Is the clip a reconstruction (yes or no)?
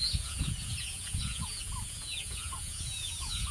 yes